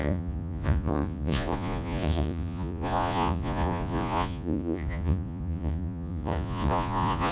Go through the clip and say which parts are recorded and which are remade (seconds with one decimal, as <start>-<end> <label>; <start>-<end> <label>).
0.0-7.3 remade

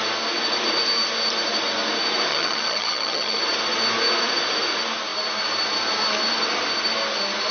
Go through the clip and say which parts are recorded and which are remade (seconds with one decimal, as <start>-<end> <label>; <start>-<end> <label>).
0.0-2.3 recorded; 2.3-3.4 remade; 3.4-7.5 recorded

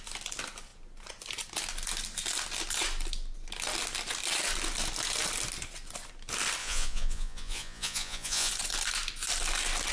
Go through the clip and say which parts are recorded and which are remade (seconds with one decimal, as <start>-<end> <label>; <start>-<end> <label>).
0.0-6.6 recorded; 6.6-8.5 remade; 8.5-9.9 recorded

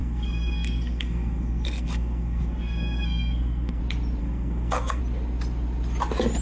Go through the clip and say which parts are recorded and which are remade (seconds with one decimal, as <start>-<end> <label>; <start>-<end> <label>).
0.0-3.8 remade; 3.8-4.2 recorded; 4.2-5.0 remade; 5.0-6.4 recorded

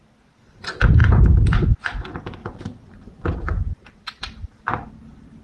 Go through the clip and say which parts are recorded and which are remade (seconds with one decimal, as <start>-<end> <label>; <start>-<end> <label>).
0.0-2.4 recorded; 2.4-4.9 remade; 4.9-5.4 recorded